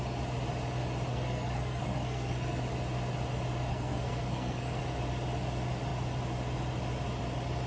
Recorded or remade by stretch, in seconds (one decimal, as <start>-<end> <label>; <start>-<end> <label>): 0.0-1.1 recorded; 1.1-2.6 remade; 2.6-3.7 recorded; 3.7-4.8 remade; 4.8-7.7 recorded